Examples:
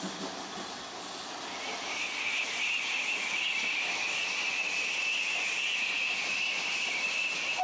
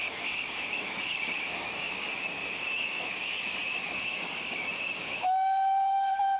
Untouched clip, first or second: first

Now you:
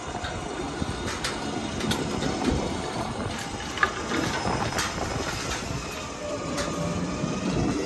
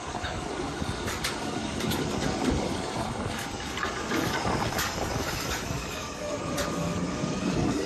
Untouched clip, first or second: first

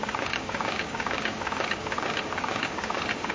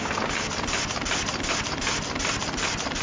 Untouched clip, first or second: second